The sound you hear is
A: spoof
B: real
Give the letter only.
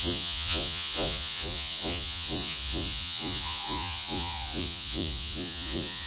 A